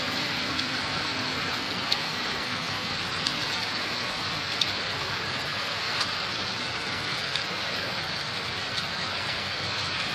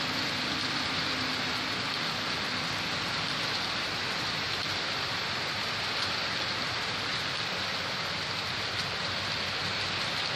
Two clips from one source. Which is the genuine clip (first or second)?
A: second